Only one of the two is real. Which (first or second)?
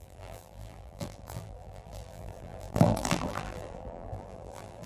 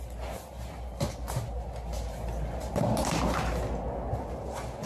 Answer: second